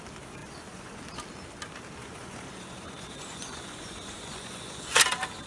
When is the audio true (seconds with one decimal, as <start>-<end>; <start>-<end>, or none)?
0.0-0.4; 1.0-2.0; 5.0-5.5